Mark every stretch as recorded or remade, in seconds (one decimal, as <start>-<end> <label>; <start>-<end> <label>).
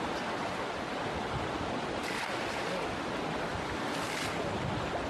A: 0.0-5.1 recorded